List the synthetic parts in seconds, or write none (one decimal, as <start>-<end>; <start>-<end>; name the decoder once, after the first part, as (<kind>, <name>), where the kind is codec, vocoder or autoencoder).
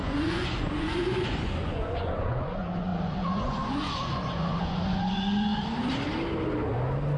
0.0-5.5 (vocoder, Vocos)